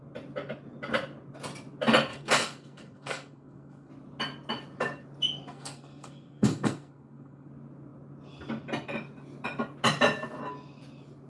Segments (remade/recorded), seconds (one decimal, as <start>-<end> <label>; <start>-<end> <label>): 0.0-2.1 recorded; 2.1-3.9 remade; 3.9-5.5 recorded; 5.5-7.5 remade; 7.5-11.3 recorded